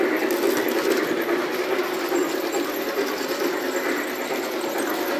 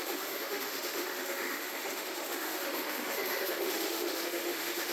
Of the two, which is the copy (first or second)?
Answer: second